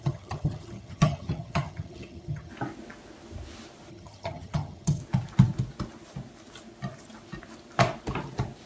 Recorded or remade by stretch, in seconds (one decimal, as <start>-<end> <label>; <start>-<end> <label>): 0.0-2.5 remade; 2.5-3.9 recorded; 3.9-5.0 remade; 5.0-8.7 recorded